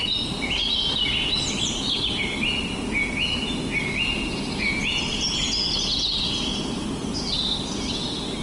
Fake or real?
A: real